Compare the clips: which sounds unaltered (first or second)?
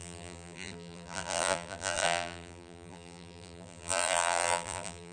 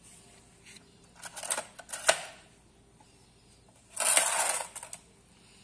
second